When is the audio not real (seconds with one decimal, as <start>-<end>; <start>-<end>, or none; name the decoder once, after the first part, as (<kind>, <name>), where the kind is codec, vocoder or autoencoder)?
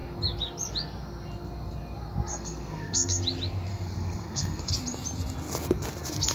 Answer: 2.3-3.2 (codec, SNAC); 3.7-4.7